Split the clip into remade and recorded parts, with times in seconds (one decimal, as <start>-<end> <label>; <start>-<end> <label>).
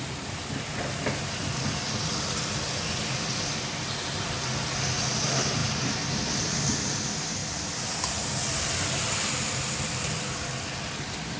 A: 0.0-11.4 recorded